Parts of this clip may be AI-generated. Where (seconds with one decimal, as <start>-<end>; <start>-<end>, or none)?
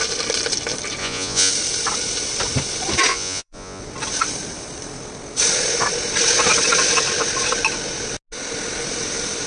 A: 1.0-1.5; 3.1-3.8